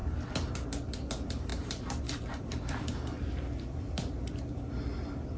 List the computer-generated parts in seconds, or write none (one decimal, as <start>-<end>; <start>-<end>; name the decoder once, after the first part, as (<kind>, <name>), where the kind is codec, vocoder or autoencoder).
1.5-4.7 (vocoder, BigVGAN v2)